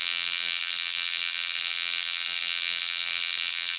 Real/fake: fake